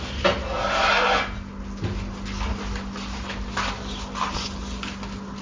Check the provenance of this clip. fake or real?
real